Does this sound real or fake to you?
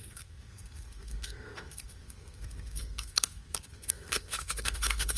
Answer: fake